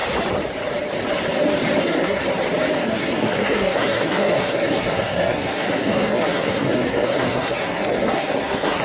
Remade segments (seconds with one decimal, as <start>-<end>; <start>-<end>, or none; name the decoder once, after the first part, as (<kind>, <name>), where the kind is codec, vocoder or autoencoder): 1.8-2.2 (codec, SNAC); 2.8-8.8